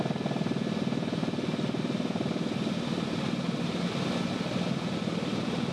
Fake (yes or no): no